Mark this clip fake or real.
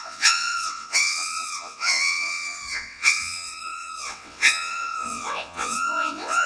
fake